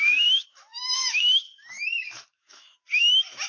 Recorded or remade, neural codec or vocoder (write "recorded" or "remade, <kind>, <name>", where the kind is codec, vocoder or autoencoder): remade, autoencoder, DAC-VAE